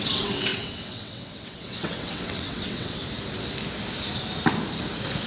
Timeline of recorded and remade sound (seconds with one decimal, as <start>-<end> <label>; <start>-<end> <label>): 0.0-3.0 remade; 3.0-5.3 recorded